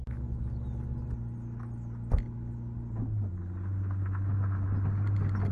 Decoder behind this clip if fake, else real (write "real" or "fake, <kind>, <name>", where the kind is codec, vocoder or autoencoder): real